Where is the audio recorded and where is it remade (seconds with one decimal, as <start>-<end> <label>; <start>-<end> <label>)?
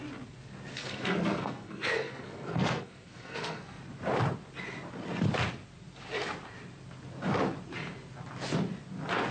0.0-0.7 recorded; 0.7-3.8 remade; 3.8-9.3 recorded